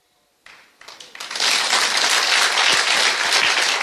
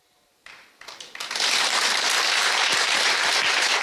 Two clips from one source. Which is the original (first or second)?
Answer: first